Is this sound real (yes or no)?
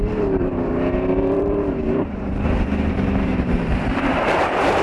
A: no